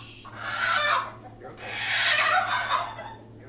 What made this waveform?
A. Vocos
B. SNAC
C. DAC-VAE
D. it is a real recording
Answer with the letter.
D